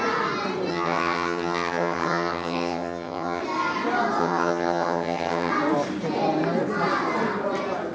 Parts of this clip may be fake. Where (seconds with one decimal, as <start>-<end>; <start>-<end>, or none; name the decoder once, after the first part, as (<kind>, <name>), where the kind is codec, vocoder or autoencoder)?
0.7-3.4 (vocoder, HiFi-GAN); 4.2-5.5